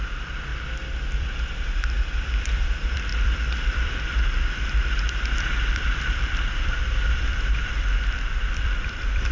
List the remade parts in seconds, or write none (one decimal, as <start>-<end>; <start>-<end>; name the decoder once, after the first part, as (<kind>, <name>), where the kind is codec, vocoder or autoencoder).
0.0-0.5 (vocoder, BigVGAN v2); 1.2-9.3